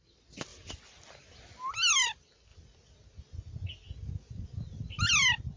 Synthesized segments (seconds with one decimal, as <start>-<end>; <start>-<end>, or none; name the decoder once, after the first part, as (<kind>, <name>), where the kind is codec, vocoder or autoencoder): none